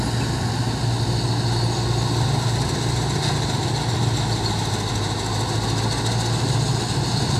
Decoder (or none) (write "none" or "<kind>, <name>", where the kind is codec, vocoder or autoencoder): none